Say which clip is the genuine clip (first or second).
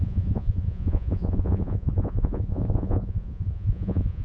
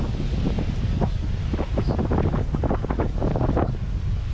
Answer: second